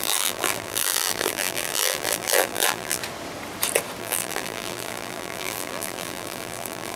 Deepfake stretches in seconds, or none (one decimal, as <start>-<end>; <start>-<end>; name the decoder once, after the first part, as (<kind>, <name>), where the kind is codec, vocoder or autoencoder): 0.0-3.0 (vocoder, BigVGAN v2); 4.0-7.0